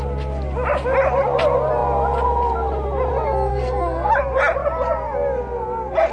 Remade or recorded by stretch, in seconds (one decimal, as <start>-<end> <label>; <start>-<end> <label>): 0.0-3.5 recorded; 3.5-4.1 remade; 4.1-6.1 recorded